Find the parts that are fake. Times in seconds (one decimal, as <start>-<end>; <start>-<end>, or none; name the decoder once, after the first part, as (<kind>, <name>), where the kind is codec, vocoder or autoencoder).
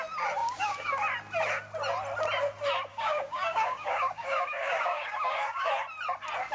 0.4-1.0 (codec, DAC); 2.9-5.7